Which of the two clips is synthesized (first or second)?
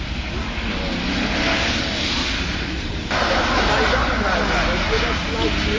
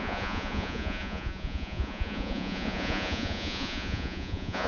second